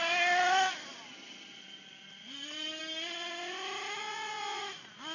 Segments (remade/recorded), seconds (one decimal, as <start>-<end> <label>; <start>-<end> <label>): 0.0-4.0 recorded; 4.0-4.6 remade; 4.6-5.1 recorded

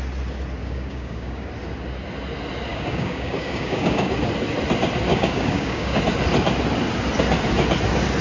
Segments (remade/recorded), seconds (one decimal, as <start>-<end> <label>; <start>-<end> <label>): 0.0-0.6 recorded; 0.6-1.5 remade; 1.5-2.7 recorded; 2.7-4.1 remade; 4.1-5.1 recorded; 5.1-6.0 remade; 6.0-8.2 recorded

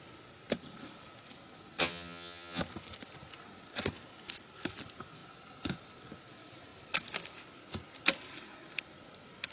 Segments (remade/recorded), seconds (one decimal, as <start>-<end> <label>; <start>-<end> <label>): 0.0-1.8 recorded; 1.8-2.6 remade; 2.6-9.5 recorded

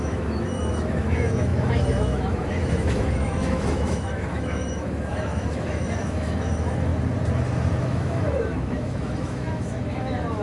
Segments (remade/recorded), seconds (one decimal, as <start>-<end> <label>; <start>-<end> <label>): 0.0-6.9 remade; 6.9-7.8 recorded; 7.8-10.4 remade

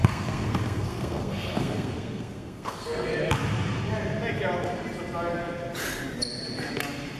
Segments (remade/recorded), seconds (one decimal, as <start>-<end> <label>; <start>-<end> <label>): 0.0-3.1 remade; 3.1-7.2 recorded

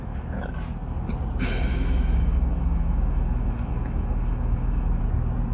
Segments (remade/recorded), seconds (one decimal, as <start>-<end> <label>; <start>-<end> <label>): 0.0-1.7 recorded; 1.7-5.0 remade; 5.0-5.5 recorded